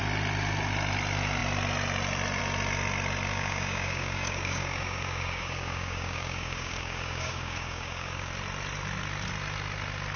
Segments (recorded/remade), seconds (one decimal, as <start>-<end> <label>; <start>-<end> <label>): 0.0-3.3 recorded; 3.3-8.3 remade; 8.3-10.2 recorded